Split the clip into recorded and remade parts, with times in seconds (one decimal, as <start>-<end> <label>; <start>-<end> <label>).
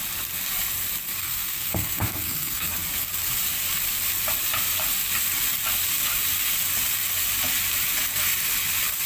0.0-1.2 recorded; 1.2-2.7 remade; 2.7-9.1 recorded